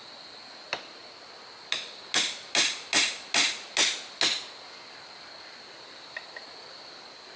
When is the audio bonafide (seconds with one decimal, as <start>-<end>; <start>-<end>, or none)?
0.0-7.4